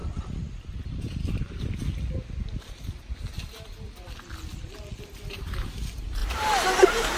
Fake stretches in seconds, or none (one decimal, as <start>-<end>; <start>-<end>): 1.3-1.8; 5.3-7.2